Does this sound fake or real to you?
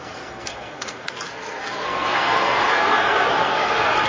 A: fake